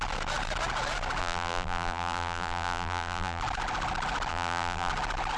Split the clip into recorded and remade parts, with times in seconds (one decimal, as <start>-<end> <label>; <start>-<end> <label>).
0.0-1.2 recorded; 1.2-3.4 remade; 3.4-4.3 recorded; 4.3-4.9 remade; 4.9-5.4 recorded